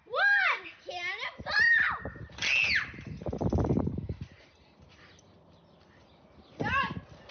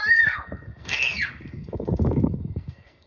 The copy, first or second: second